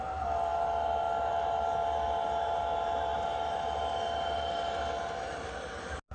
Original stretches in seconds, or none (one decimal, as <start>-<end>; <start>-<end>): 0.0-6.1